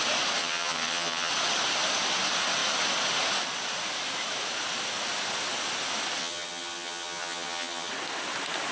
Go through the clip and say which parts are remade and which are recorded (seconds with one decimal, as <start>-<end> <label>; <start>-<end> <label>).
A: 0.0-0.4 recorded; 0.4-1.3 remade; 1.3-6.2 recorded; 6.2-7.9 remade; 7.9-8.7 recorded